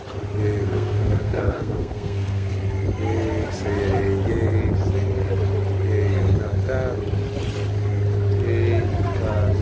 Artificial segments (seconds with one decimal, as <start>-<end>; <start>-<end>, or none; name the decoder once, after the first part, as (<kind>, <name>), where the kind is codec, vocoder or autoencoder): 0.6-2.5 (codec, SNAC)